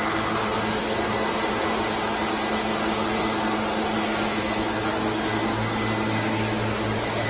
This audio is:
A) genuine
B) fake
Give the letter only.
A